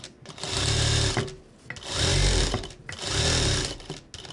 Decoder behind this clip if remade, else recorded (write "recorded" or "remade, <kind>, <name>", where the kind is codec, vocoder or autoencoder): recorded